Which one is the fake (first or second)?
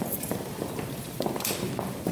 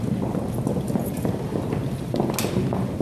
first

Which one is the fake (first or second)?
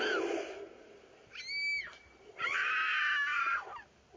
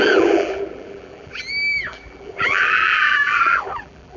second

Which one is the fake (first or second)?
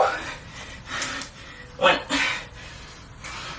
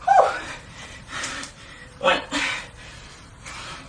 second